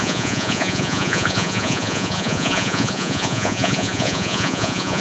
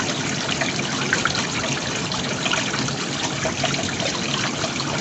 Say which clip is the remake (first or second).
first